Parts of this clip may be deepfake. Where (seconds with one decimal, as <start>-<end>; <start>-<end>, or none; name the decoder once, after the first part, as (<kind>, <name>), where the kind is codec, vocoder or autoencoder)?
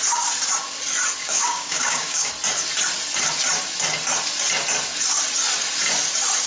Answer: 1.2-2.3 (codec, DAC)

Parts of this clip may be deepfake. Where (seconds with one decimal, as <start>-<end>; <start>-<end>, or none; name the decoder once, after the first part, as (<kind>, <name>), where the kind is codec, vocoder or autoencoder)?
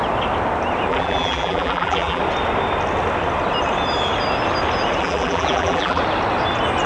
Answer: 0.9-2.2 (vocoder, BigVGAN v2); 5.0-6.0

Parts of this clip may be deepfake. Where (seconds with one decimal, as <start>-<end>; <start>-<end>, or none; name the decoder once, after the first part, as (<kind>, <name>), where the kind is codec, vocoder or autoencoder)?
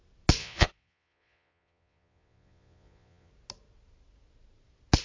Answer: 0.4-3.3 (vocoder, Vocos)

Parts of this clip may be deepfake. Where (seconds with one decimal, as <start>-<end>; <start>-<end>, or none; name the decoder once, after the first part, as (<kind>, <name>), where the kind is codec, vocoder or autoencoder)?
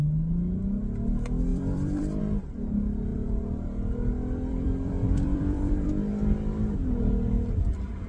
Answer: 1.5-2.2 (vocoder, BigVGAN v2); 3.1-5.9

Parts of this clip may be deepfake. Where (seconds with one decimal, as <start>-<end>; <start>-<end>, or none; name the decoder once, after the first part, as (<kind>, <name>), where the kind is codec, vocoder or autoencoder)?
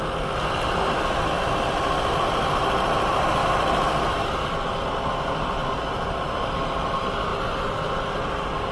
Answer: none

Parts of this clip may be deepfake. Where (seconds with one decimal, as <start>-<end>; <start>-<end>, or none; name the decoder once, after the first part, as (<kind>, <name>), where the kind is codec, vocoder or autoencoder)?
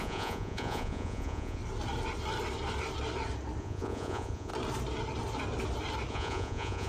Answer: 0.0-1.6 (vocoder, Vocos); 3.6-4.5; 6.1-6.9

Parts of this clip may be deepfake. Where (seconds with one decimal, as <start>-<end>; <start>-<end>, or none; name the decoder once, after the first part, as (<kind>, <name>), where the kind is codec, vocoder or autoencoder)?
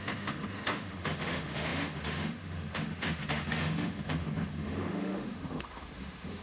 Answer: 0.0-6.4 (autoencoder, DAC-VAE)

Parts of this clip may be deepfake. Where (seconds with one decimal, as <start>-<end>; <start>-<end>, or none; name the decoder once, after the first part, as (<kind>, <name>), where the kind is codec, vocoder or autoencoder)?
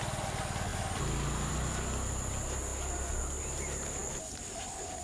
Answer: none